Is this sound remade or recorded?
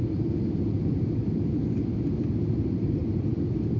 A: recorded